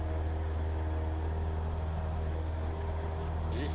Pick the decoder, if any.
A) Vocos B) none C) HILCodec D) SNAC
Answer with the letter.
B